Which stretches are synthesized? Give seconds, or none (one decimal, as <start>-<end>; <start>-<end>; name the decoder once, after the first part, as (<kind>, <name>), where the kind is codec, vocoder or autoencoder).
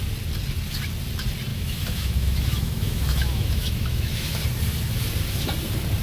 1.5-4.4 (autoencoder, DAC-VAE)